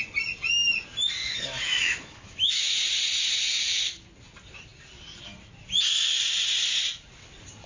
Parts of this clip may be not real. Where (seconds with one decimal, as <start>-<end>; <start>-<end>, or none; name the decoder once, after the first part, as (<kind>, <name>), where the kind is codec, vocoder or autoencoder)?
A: 1.2-2.6 (autoencoder, DAC-VAE)